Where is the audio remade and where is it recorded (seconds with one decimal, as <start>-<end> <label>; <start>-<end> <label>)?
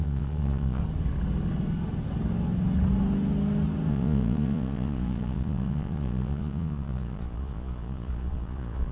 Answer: 0.0-0.8 remade; 0.8-3.9 recorded; 3.9-8.9 remade